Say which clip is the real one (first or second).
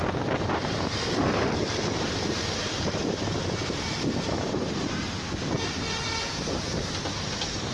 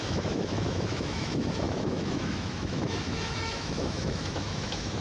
first